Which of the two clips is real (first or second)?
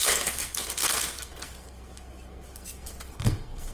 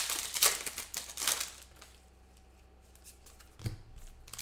second